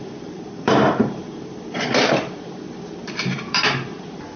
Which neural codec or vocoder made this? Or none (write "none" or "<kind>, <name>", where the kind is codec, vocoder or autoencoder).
vocoder, BigVGAN v2